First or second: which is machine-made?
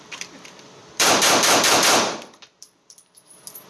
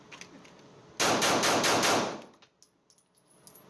first